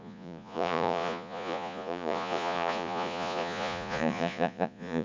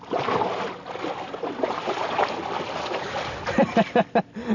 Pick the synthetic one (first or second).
first